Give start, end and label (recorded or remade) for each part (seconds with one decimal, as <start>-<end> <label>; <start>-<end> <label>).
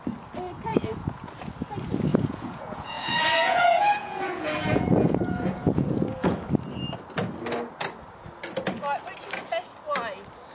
0.0-0.7 recorded; 0.7-1.3 remade; 1.3-2.1 recorded; 2.1-6.5 remade; 6.5-10.5 recorded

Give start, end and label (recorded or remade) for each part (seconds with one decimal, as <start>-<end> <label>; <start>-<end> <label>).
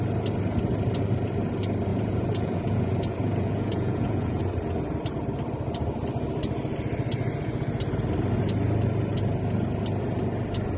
0.0-1.9 recorded; 1.9-4.4 remade; 4.4-10.8 recorded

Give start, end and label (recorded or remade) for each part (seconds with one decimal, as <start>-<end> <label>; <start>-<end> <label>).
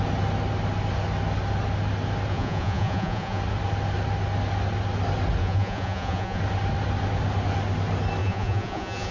0.0-2.3 recorded; 2.3-3.4 remade; 3.4-5.4 recorded; 5.4-6.4 remade; 6.4-8.2 recorded; 8.2-9.1 remade